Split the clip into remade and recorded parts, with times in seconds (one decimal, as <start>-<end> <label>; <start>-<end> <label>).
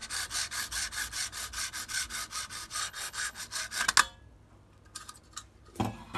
0.0-2.8 recorded; 2.8-3.4 remade; 3.4-6.2 recorded